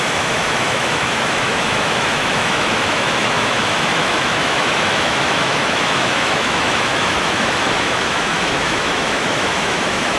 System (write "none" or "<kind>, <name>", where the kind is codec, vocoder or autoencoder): autoencoder, DAC-VAE